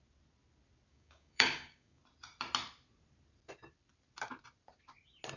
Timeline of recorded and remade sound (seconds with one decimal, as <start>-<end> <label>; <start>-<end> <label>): 0.0-0.9 recorded; 0.9-2.0 remade; 2.0-5.4 recorded